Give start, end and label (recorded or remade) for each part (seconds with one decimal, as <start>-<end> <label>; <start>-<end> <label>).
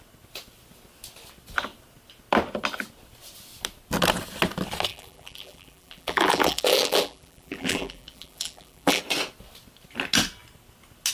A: 0.0-4.9 recorded; 4.9-9.0 remade; 9.0-11.1 recorded